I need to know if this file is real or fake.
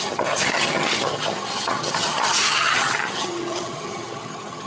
fake